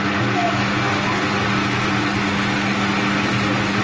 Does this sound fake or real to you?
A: real